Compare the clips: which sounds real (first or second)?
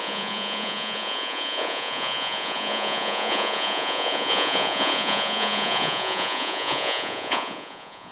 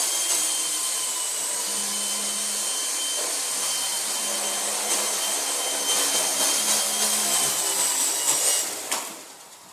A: second